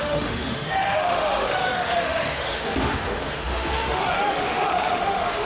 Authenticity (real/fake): fake